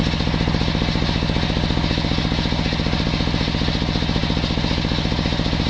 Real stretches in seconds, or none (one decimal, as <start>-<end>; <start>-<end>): 0.0-5.7